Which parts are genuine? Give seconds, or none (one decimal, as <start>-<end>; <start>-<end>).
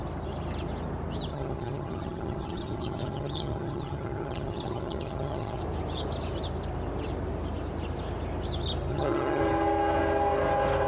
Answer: 0.0-1.3; 5.6-8.9; 9.4-10.9